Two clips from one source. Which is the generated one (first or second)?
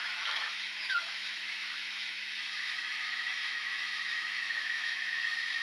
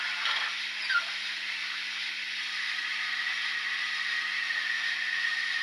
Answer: first